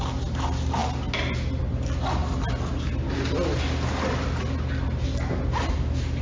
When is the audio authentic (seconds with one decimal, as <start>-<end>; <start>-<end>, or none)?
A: 0.0-6.2